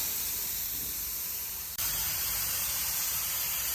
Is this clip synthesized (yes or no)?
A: yes